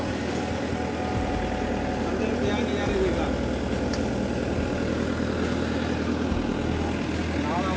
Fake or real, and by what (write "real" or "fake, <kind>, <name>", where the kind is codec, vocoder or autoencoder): real